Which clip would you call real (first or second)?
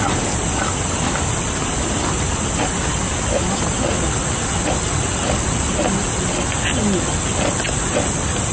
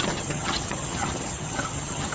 first